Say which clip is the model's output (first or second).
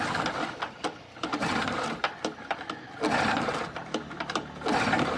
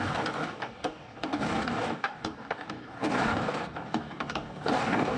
second